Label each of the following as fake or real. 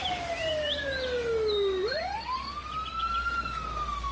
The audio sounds real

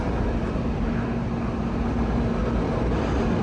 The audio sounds real